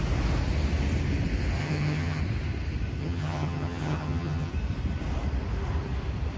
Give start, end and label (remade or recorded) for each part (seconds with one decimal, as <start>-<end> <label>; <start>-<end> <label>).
0.0-1.6 recorded; 1.6-2.2 remade; 2.2-3.0 recorded; 3.0-4.5 remade; 4.5-6.4 recorded